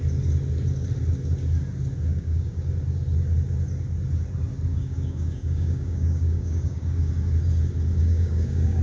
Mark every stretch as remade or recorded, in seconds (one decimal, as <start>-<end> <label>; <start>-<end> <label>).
0.0-2.1 recorded; 2.1-2.7 remade; 2.7-4.7 recorded; 4.7-7.1 remade; 7.1-8.0 recorded; 8.0-8.8 remade

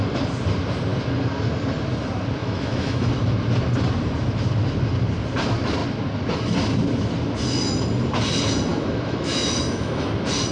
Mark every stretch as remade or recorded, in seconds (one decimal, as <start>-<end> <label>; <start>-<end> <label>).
0.0-2.4 recorded; 2.4-3.1 remade; 3.1-8.7 recorded; 8.7-10.1 remade; 10.1-10.5 recorded

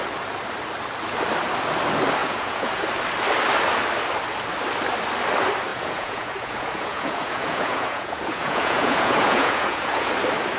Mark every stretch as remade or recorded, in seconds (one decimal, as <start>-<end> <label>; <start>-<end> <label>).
0.0-2.2 recorded; 2.2-2.7 remade; 2.7-5.7 recorded; 5.7-10.1 remade; 10.1-10.6 recorded

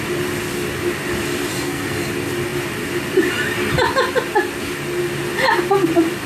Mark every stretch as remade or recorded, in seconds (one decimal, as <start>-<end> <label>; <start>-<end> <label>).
0.0-1.5 recorded; 1.5-2.1 remade; 2.1-6.3 recorded

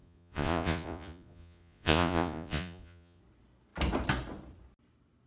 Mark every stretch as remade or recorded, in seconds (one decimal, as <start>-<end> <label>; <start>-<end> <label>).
0.0-3.2 remade; 3.2-5.3 recorded

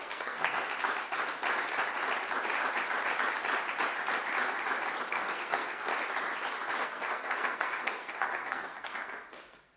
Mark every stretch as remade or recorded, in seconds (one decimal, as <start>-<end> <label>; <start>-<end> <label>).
0.0-0.7 remade; 0.7-5.1 recorded; 5.1-5.9 remade; 5.9-6.8 recorded; 6.8-9.8 remade

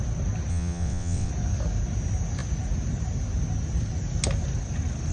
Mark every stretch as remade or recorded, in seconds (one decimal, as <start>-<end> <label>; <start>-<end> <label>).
0.0-0.5 recorded; 0.5-1.3 remade; 1.3-5.1 recorded